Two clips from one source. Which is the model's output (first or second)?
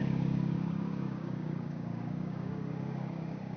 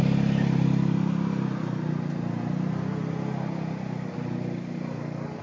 first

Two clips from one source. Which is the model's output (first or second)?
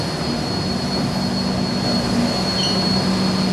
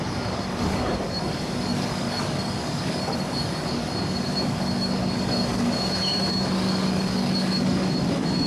second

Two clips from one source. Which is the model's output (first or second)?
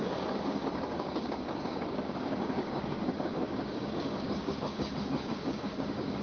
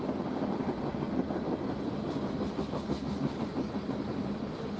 first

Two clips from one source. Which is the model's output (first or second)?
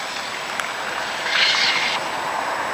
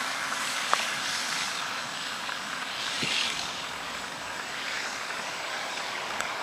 second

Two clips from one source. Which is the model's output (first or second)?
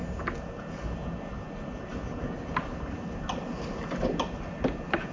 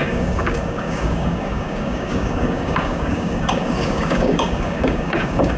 second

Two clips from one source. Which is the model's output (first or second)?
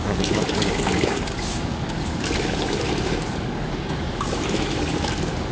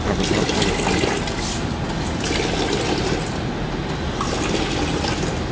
first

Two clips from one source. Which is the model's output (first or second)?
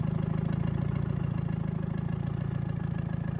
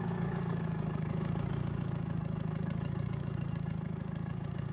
second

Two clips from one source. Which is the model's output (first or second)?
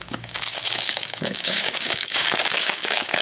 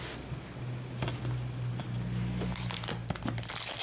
first